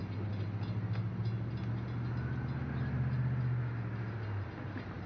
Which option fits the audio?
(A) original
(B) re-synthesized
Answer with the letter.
A